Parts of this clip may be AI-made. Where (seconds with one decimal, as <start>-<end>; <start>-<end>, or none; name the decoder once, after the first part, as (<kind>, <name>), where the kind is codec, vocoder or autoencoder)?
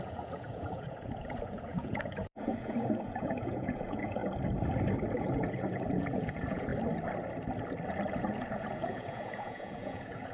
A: 0.0-4.2 (vocoder, Vocos); 5.2-6.7; 8.2-10.3